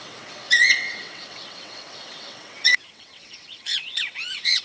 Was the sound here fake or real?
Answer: fake